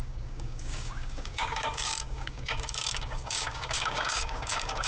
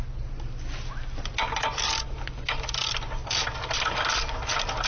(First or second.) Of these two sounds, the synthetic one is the first